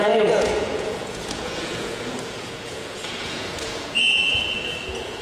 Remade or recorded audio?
remade